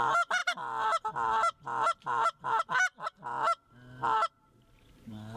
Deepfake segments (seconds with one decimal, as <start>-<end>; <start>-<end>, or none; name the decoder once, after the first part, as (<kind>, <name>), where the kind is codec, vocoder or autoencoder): 0.4-2.7 (vocoder, BigVGAN v2)